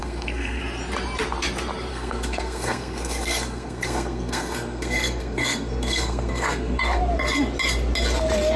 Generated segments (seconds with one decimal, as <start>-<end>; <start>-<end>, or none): 0.0-0.6; 1.9-7.0